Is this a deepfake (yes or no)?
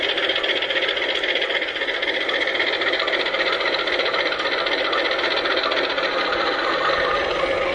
no